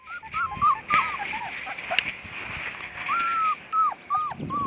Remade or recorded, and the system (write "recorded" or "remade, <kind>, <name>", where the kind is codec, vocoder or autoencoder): recorded